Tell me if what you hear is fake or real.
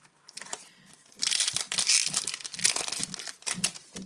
real